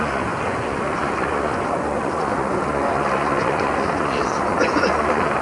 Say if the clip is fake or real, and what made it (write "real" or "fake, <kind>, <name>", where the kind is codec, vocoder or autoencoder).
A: fake, vocoder, Vocos